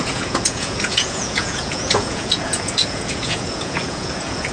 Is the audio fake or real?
fake